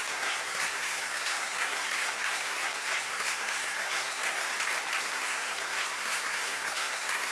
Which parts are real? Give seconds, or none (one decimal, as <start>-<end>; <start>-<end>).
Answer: 4.5-5.0